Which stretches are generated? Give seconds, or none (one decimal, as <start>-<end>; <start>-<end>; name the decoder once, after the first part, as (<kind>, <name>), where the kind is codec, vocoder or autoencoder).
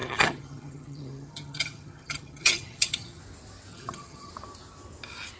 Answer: 0.0-3.2 (vocoder, HiFi-GAN); 3.7-4.3